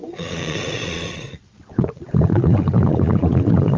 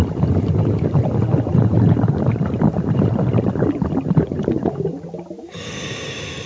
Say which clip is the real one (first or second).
second